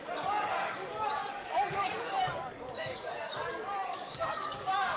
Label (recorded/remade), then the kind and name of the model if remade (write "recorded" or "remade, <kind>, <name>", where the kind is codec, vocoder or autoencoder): remade, codec, DAC